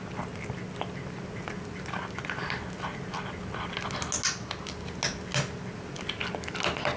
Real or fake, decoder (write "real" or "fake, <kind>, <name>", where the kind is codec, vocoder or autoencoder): real